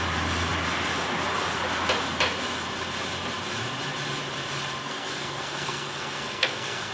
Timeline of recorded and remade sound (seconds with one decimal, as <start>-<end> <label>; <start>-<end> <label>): 0.0-4.8 recorded; 4.8-6.9 remade